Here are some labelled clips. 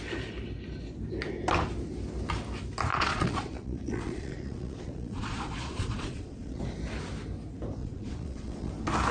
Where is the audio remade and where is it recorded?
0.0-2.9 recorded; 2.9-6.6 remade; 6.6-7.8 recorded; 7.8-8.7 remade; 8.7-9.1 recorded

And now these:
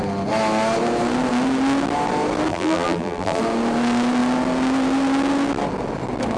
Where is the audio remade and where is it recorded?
0.0-2.5 recorded; 2.5-3.4 remade; 3.4-6.4 recorded

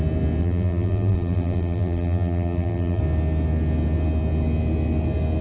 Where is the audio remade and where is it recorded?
0.0-0.4 recorded; 0.4-3.0 remade; 3.0-5.4 recorded

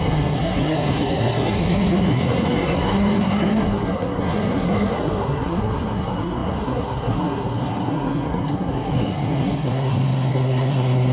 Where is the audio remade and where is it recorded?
0.0-11.1 remade